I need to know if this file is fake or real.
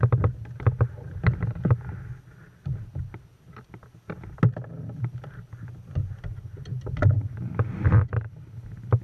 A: real